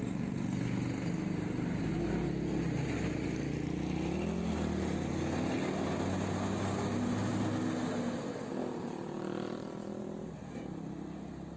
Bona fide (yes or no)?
yes